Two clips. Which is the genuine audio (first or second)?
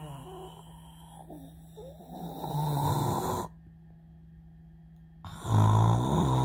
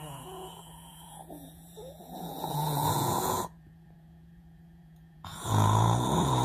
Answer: first